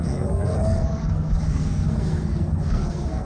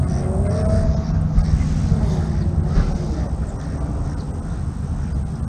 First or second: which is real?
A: second